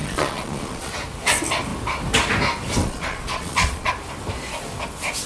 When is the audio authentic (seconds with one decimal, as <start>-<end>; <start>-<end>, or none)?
0.9-2.8; 3.9-5.3